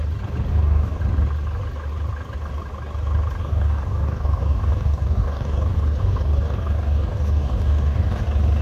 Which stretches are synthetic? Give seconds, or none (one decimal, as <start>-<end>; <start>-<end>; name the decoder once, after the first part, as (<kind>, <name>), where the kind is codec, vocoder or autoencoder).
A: 0.5-1.0 (codec, DAC); 3.4-8.2